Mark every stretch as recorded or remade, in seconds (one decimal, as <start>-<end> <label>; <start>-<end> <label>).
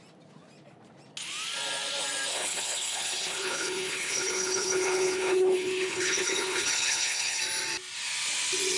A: 0.0-2.3 recorded; 2.3-7.4 remade; 7.4-8.8 recorded